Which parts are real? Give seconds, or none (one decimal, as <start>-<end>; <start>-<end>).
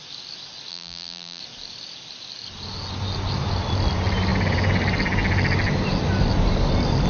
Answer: 0.0-0.7; 1.4-7.1